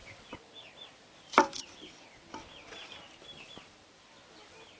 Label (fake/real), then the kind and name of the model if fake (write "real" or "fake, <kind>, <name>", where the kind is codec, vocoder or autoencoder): real